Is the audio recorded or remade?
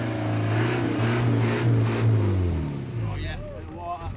recorded